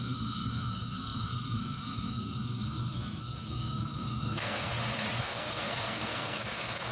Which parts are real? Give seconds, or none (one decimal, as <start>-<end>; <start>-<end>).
4.7-5.2